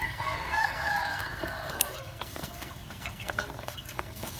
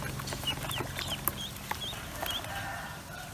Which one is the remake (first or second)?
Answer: first